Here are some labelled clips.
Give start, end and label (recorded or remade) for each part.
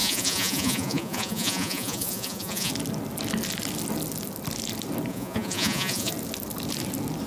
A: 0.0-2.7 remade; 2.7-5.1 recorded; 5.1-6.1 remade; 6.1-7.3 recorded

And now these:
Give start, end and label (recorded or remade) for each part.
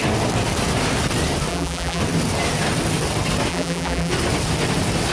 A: 0.0-1.5 recorded; 1.5-2.0 remade; 2.0-3.5 recorded; 3.5-4.1 remade; 4.1-5.1 recorded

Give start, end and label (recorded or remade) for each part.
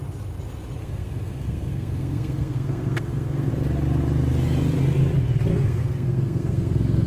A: 0.0-0.8 recorded; 0.8-3.5 remade; 3.5-5.5 recorded; 5.5-7.1 remade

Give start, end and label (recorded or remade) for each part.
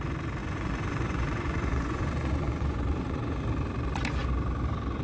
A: 0.0-0.4 recorded; 0.4-3.4 remade; 3.4-5.0 recorded